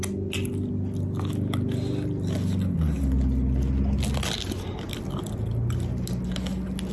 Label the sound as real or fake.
real